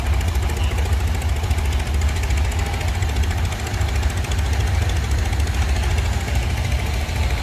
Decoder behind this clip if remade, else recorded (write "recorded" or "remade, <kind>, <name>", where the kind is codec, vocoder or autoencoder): recorded